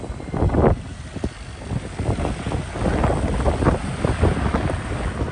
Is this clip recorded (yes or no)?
yes